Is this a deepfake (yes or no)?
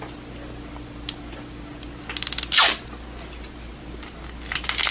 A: no